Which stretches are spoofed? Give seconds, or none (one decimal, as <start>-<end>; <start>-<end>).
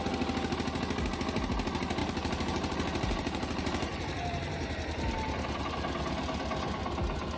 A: 2.0-5.7